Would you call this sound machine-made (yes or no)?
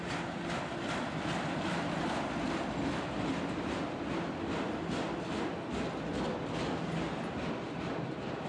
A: no